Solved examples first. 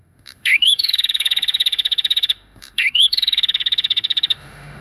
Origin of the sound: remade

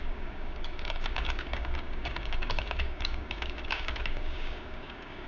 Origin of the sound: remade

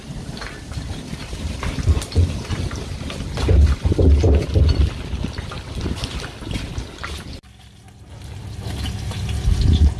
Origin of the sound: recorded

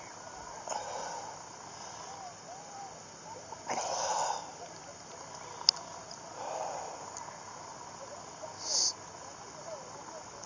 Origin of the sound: recorded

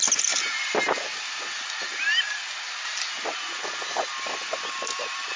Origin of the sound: recorded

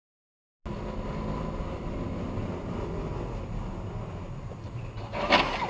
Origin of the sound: recorded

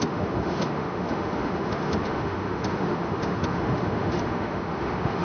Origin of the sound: remade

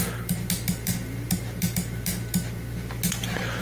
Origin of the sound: recorded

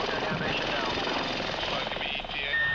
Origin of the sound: recorded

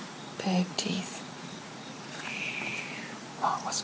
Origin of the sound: remade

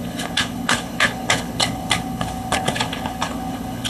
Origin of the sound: remade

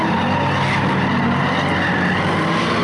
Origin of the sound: recorded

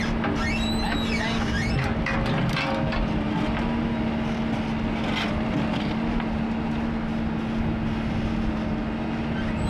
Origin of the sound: recorded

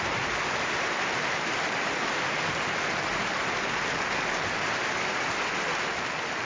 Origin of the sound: recorded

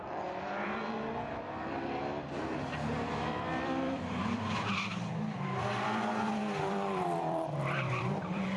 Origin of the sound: remade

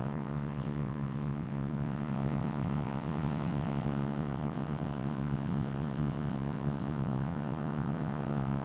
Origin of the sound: remade